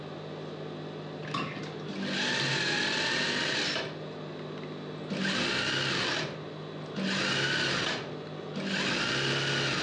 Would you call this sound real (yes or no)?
yes